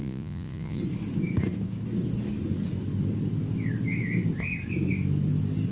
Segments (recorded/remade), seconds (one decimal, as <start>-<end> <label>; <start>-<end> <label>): 0.0-0.8 remade; 0.8-5.7 recorded